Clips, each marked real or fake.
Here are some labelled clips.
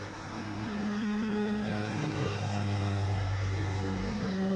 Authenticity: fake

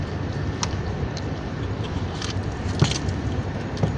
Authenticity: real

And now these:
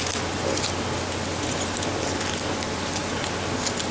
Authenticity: real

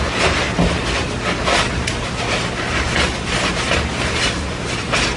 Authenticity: real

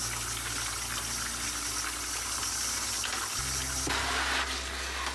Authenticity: real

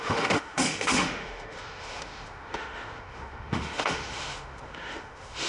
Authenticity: fake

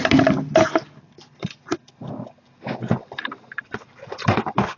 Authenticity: real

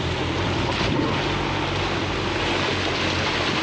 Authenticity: real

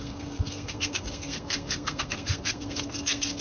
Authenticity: fake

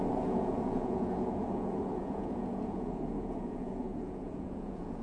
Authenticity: fake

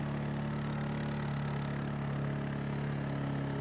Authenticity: real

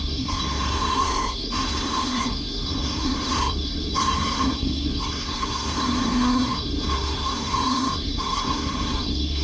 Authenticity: fake